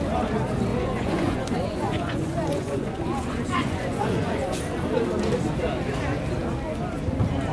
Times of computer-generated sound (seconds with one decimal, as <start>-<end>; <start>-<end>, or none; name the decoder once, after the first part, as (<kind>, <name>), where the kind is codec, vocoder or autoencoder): 0.7-4.6 (vocoder, Vocos)